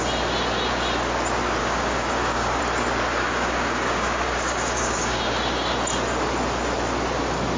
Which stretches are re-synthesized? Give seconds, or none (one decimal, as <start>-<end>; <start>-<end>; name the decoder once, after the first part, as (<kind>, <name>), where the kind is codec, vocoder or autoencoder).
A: 1.6-2.6 (codec, DAC); 3.1-5.2